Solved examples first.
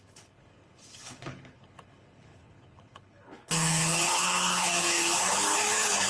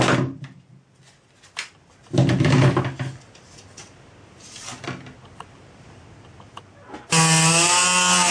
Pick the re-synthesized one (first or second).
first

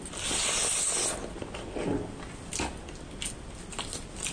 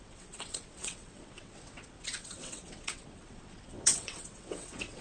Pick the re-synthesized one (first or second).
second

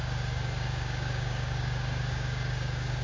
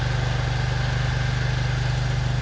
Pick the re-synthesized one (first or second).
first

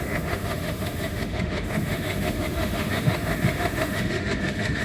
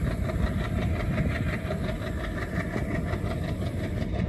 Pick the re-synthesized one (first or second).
first